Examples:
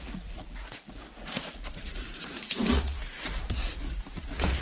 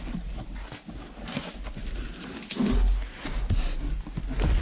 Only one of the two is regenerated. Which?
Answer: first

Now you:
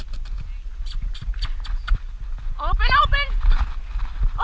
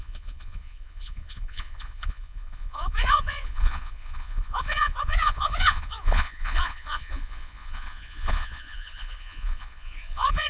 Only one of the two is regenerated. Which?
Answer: second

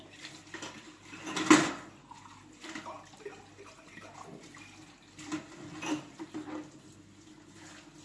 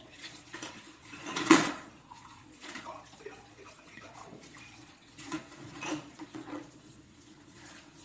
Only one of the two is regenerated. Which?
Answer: second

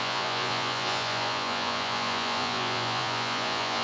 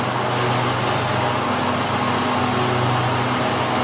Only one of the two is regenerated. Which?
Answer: first